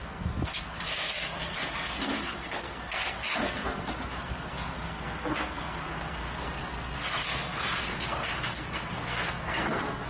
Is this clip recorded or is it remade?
remade